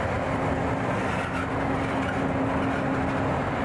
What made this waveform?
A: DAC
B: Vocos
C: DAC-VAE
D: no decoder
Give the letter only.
D